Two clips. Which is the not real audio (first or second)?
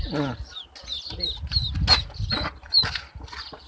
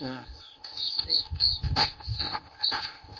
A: second